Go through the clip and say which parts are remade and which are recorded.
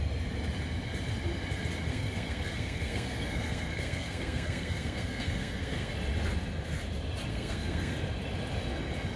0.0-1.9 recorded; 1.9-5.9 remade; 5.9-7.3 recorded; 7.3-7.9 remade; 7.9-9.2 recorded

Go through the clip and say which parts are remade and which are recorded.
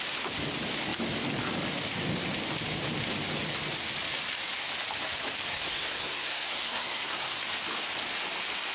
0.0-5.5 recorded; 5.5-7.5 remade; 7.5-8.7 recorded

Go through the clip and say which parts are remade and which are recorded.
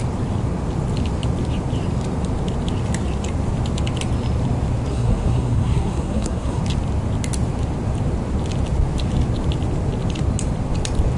0.0-4.9 recorded; 4.9-6.6 remade; 6.6-11.2 recorded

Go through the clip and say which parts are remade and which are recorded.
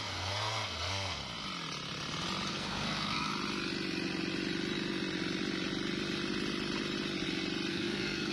0.0-1.2 remade; 1.2-2.5 recorded; 2.5-3.3 remade; 3.3-7.7 recorded; 7.7-8.3 remade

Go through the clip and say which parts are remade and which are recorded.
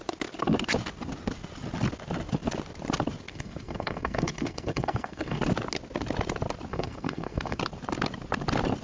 0.0-3.3 recorded; 3.3-5.4 remade; 5.4-6.7 recorded; 6.7-7.6 remade; 7.6-8.8 recorded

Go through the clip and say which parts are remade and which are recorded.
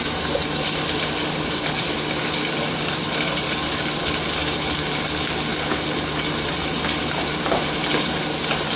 0.0-8.8 recorded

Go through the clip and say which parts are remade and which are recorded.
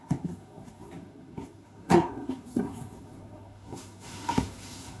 0.0-5.0 remade